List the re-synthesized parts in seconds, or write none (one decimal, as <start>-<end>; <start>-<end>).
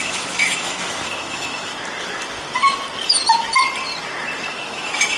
0.0-1.7; 4.5-5.2